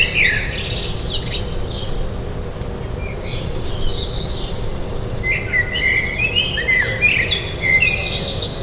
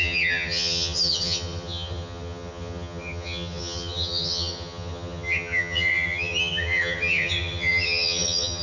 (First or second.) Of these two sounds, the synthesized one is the second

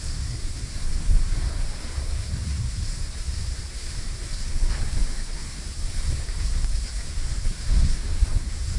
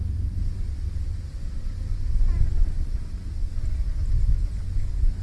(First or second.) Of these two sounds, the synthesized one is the first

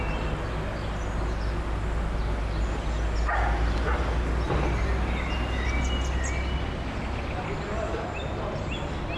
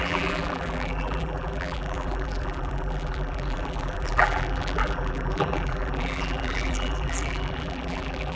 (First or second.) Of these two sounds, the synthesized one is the second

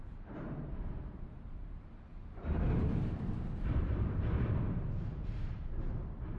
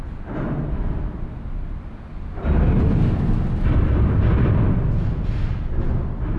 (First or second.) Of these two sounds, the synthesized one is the first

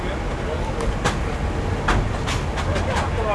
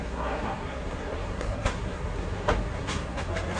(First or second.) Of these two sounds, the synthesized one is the second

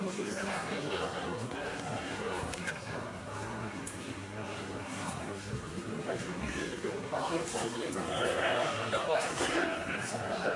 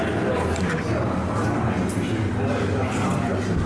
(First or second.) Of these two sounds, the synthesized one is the first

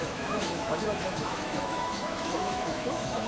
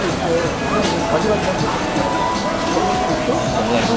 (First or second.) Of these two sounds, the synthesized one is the first